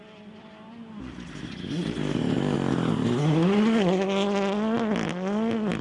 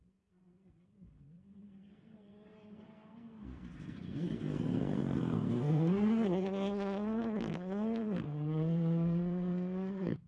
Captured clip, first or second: first